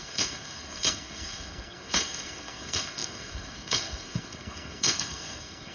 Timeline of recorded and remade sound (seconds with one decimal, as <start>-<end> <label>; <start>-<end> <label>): 0.0-5.7 remade